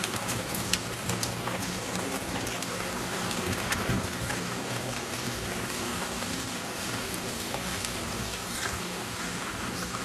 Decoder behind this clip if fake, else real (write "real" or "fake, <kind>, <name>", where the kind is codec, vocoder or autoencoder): fake, codec, DAC